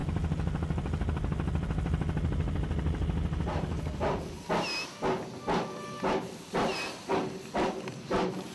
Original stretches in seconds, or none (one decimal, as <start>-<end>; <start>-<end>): 0.0-8.5